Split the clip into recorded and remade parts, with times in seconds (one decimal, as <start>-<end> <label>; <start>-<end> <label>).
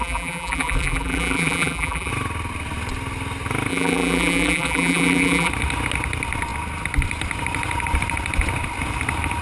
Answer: 0.0-2.1 remade; 2.1-3.7 recorded; 3.7-5.5 remade; 5.5-9.4 recorded